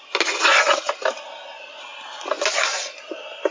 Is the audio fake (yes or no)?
no